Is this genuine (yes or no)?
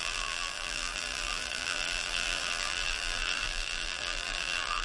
no